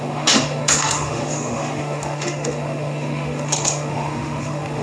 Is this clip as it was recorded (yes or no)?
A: no